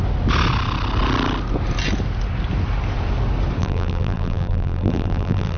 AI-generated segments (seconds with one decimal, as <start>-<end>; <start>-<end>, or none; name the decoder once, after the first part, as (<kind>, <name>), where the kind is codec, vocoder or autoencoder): 3.6-5.6 (vocoder, BigVGAN v2)